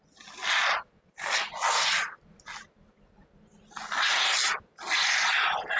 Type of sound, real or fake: real